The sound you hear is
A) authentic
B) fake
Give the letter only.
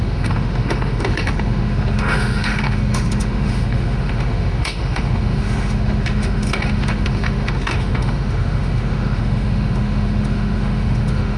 B